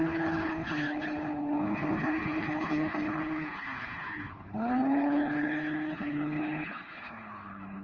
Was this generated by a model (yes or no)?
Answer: yes